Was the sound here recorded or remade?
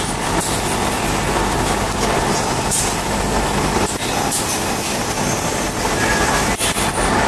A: recorded